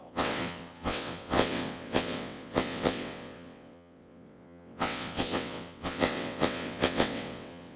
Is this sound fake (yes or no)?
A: yes